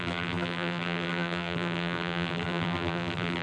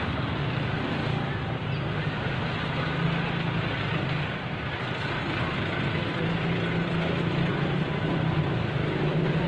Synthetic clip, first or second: first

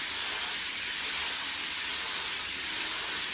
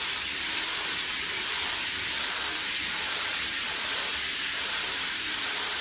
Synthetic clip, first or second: second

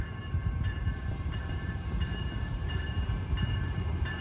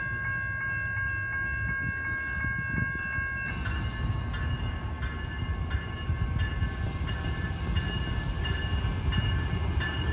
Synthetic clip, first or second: first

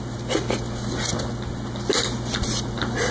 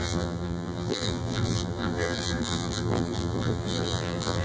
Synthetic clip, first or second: second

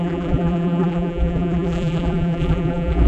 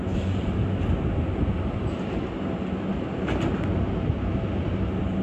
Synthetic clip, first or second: first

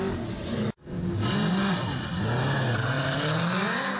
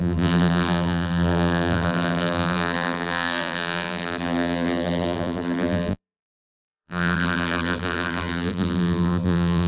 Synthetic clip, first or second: second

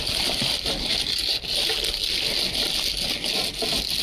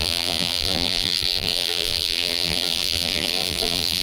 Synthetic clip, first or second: second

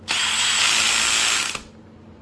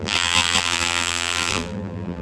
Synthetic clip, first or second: second